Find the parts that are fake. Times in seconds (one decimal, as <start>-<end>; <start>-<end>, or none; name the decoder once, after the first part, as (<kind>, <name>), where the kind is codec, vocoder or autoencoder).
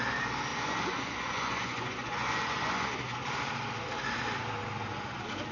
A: 0.5-2.9 (vocoder, Vocos)